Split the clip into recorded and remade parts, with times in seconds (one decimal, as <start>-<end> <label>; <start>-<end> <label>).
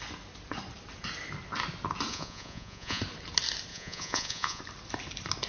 0.0-2.1 recorded; 2.1-3.0 remade; 3.0-3.7 recorded; 3.7-4.6 remade; 4.6-5.5 recorded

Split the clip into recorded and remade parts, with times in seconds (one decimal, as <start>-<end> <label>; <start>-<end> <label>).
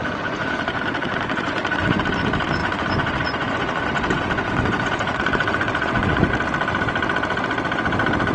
0.0-2.0 remade; 2.0-2.6 recorded; 2.6-6.3 remade; 6.3-8.3 recorded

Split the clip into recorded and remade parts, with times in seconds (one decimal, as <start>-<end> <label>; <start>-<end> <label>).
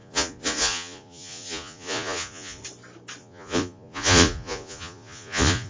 0.0-2.6 remade; 2.6-3.2 recorded; 3.2-5.7 remade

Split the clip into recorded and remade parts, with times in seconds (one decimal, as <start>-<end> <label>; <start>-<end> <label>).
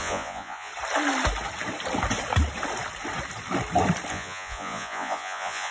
0.0-0.7 remade; 0.7-4.1 recorded; 4.1-5.7 remade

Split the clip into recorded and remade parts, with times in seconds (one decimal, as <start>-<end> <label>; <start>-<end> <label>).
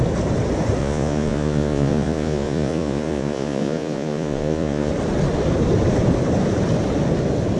0.0-0.8 recorded; 0.8-4.9 remade; 4.9-7.6 recorded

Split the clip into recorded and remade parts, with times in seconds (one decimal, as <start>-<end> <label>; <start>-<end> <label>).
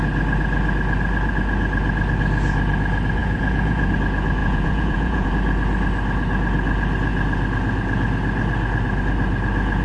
0.0-3.2 recorded; 3.2-3.9 remade; 3.9-4.4 recorded; 4.4-5.3 remade; 5.3-9.8 recorded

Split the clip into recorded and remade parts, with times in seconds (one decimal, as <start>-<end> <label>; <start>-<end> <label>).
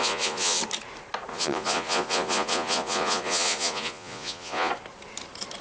0.0-0.6 remade; 0.6-1.3 recorded; 1.3-4.7 remade; 4.7-5.6 recorded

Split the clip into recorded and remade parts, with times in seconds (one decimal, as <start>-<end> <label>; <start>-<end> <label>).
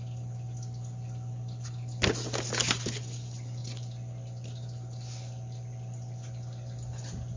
0.0-7.4 recorded